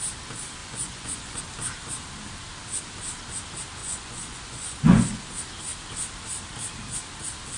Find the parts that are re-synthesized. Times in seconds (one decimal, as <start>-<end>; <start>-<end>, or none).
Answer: 0.6-1.4; 3.8-5.2